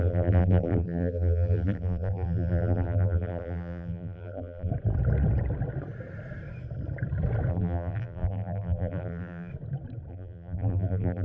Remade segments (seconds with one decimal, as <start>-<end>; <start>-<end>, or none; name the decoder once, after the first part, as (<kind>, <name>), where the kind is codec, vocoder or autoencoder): 0.0-4.7 (vocoder, BigVGAN v2); 7.5-9.5; 10.1-11.2